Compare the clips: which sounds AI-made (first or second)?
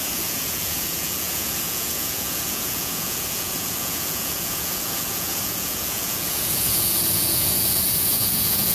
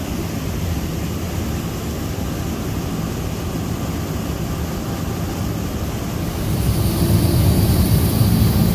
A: first